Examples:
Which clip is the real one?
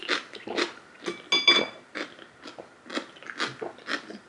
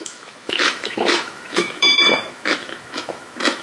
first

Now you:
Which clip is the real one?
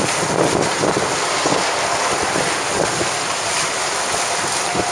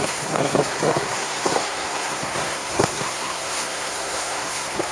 first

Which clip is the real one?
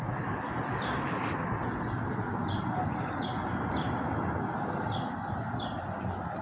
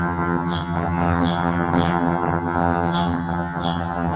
first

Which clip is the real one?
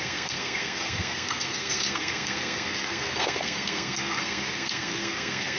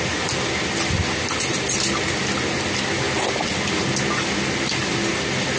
second